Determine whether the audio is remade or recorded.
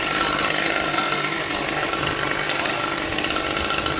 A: recorded